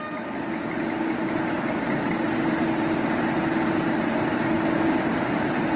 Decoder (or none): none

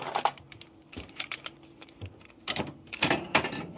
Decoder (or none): vocoder, BigVGAN v2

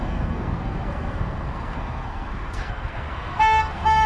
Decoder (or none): codec, SNAC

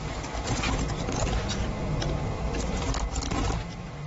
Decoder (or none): none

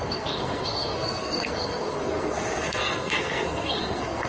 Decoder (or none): codec, SNAC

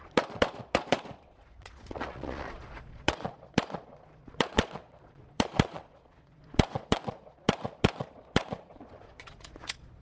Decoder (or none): vocoder, Vocos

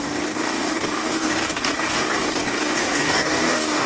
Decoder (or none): codec, DAC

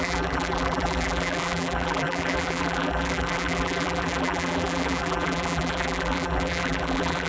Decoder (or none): vocoder, BigVGAN v2